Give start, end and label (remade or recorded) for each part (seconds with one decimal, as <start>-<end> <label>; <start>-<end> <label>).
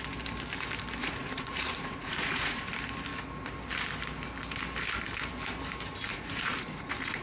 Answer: 0.0-1.0 recorded; 1.0-2.7 remade; 2.7-6.1 recorded; 6.1-7.2 remade